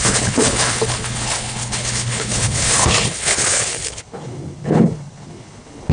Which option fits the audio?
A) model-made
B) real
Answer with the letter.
A